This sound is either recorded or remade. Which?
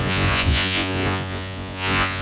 remade